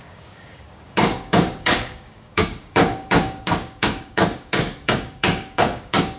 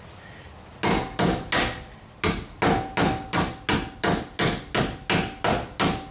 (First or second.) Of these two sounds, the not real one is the first